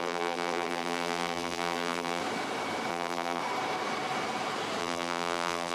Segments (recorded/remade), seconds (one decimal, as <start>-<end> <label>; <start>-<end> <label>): 0.0-2.2 remade; 2.2-2.9 recorded; 2.9-3.4 remade; 3.4-4.8 recorded; 4.8-5.7 remade